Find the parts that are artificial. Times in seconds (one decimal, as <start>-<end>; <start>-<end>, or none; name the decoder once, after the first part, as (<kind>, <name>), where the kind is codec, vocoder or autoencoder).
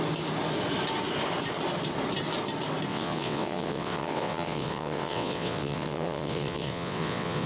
2.9-7.5 (vocoder, WaveNeXt)